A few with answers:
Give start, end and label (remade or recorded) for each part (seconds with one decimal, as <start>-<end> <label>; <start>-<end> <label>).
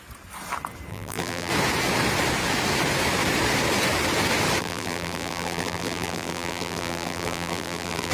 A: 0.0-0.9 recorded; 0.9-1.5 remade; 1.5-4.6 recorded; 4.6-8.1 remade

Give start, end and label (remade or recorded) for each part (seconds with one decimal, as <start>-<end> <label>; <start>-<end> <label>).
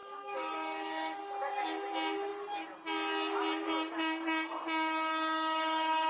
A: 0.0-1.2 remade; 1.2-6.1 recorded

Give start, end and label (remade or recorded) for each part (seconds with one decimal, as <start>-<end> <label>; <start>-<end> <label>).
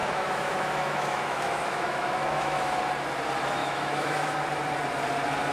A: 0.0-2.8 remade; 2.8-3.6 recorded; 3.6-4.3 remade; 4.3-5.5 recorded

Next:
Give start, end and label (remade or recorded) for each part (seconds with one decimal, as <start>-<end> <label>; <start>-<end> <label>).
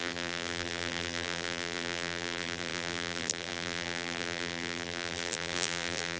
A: 0.0-6.2 remade